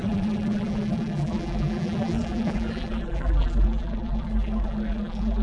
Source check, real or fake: fake